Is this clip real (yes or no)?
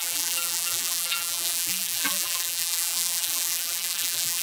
no